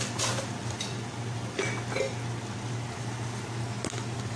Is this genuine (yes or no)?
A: yes